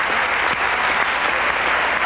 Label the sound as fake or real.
real